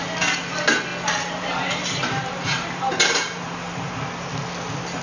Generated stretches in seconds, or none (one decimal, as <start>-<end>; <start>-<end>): 0.9-3.9